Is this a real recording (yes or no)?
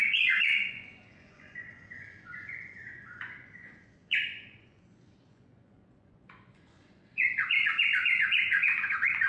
no